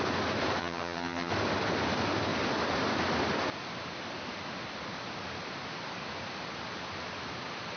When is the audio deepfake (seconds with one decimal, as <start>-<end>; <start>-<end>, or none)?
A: 0.6-1.3